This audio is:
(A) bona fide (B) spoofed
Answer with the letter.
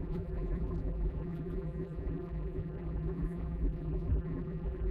B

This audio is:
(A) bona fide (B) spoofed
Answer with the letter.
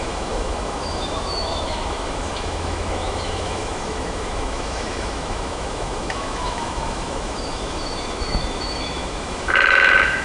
B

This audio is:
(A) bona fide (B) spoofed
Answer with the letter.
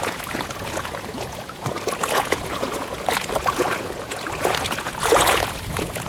B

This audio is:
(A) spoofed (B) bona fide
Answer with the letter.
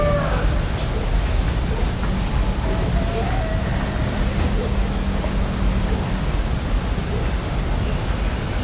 B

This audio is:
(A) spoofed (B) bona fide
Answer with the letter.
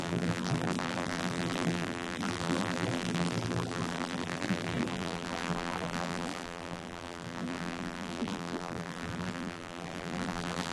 A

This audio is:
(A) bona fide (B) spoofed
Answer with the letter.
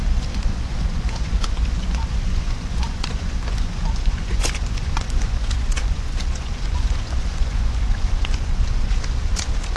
B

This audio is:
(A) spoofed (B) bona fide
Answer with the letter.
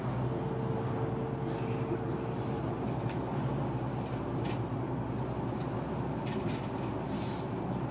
B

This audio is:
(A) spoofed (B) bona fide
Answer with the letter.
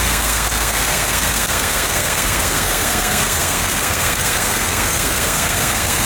A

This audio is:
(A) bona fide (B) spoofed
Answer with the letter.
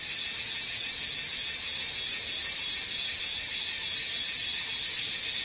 A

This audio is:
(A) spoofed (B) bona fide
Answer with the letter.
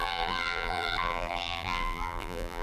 A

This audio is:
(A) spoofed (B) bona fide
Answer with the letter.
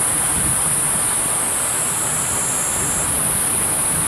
B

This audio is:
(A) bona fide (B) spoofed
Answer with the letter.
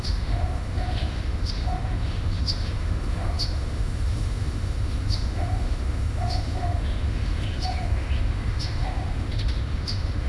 B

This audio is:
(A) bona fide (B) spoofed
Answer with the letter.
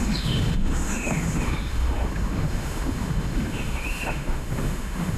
B